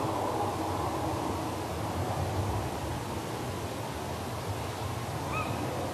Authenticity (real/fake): real